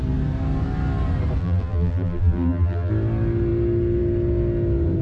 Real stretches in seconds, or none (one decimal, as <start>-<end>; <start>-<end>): 0.0-1.4; 2.9-5.0